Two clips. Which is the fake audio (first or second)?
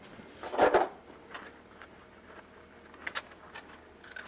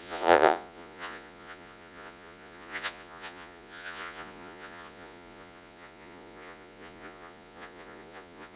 second